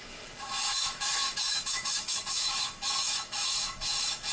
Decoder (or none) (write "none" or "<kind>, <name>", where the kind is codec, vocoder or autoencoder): autoencoder, DAC-VAE